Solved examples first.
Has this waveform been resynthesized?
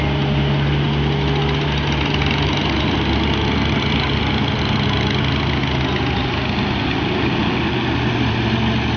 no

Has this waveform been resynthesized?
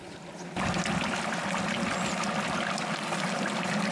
no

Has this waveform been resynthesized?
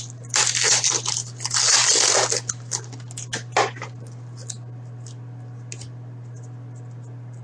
no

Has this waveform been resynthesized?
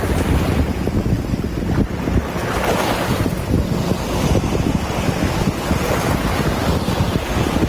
no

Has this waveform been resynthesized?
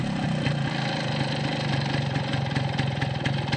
no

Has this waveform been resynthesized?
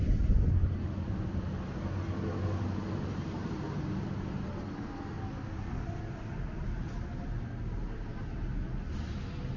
no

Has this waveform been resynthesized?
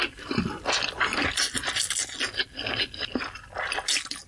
no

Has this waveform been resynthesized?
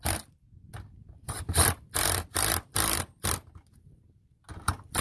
no